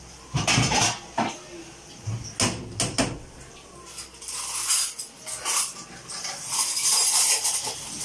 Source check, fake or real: real